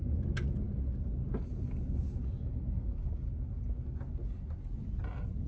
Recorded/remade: recorded